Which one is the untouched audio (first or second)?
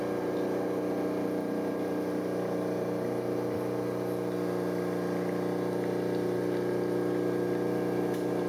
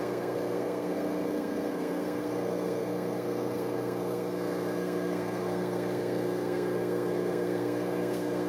first